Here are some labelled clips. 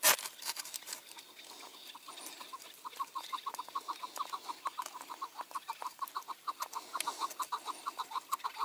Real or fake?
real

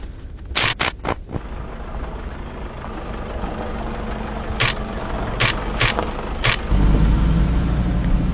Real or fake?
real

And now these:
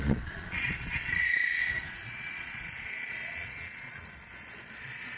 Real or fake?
fake